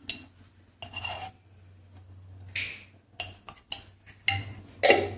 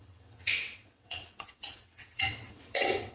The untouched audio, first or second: first